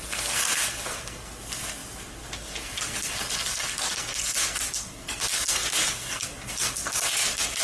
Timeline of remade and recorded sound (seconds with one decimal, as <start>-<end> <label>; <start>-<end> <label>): 0.0-7.6 remade